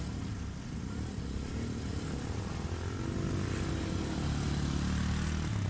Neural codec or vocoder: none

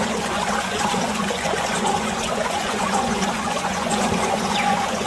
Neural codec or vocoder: vocoder, Vocos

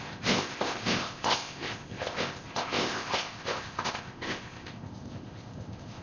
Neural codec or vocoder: codec, ZipCodec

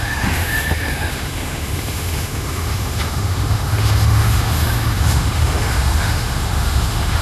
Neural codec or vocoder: autoencoder, DAC-VAE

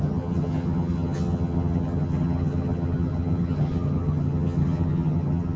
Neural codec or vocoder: vocoder, HiFi-GAN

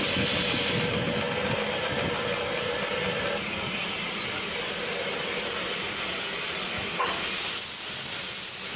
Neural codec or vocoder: none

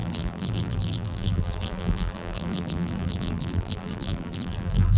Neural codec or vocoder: vocoder, BigVGAN v2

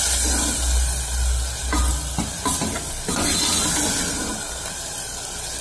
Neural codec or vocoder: none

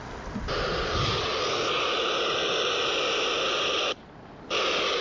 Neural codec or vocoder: none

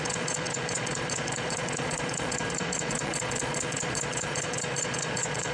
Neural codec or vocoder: vocoder, Vocos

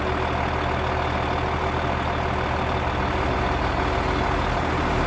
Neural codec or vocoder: none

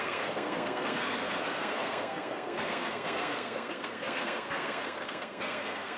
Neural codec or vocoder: codec, SNAC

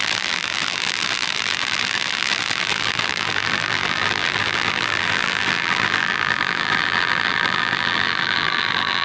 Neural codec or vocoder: vocoder, BigVGAN v2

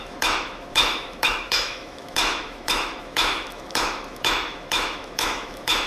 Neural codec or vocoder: autoencoder, DAC-VAE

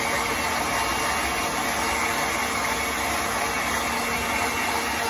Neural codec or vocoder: none